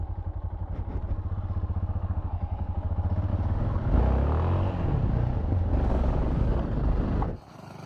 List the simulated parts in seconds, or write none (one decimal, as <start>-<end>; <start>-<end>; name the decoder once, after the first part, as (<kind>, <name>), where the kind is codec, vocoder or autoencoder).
2.0-2.9 (codec, DAC); 3.3-4.0; 5.7-6.6